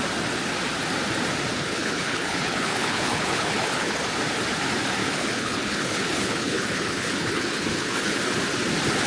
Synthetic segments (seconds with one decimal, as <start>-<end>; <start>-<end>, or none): 1.5-4.0; 5.0-8.2